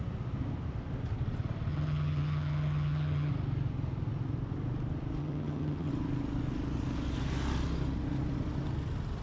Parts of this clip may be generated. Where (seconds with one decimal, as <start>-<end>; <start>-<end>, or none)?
1.7-3.3; 5.2-5.9

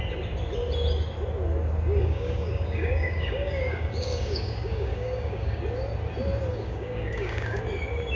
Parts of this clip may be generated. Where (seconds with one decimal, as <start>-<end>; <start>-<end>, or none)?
2.0-5.6; 6.5-7.6

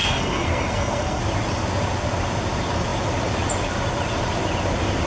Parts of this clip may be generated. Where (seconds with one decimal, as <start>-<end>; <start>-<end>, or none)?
0.0-1.2

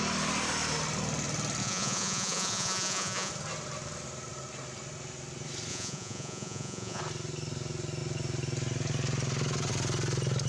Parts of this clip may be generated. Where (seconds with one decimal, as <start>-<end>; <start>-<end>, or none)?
1.6-3.3; 5.7-7.0

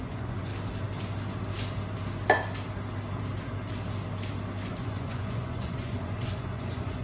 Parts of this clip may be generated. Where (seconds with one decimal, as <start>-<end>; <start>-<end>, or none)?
0.0-0.5; 4.7-7.0

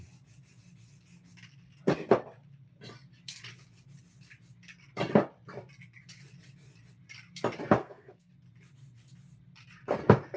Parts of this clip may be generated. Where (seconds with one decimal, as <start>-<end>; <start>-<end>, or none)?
7.8-8.3

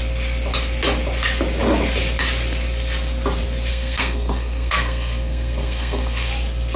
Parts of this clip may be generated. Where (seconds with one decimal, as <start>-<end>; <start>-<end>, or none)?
3.7-6.3